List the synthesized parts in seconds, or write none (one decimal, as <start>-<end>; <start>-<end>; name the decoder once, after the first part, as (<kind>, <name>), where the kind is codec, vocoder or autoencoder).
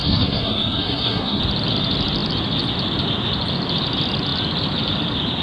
0.0-1.4 (codec, SNAC)